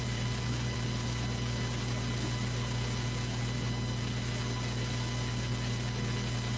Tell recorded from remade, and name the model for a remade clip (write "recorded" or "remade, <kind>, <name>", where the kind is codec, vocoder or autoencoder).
recorded